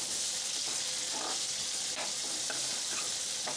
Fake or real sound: real